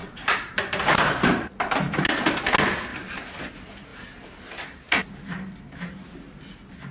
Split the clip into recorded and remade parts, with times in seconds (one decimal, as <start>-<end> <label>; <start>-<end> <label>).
0.0-2.1 remade; 2.1-6.9 recorded